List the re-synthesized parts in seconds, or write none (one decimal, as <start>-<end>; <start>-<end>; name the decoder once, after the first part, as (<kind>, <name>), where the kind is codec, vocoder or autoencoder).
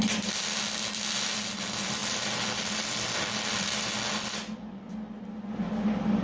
none